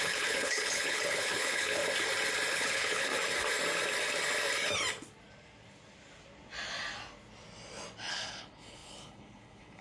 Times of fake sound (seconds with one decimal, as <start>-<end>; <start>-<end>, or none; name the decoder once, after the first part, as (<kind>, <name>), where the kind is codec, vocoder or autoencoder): 0.0-1.8 (codec, HILCodec); 2.5-3.1; 8.1-9.8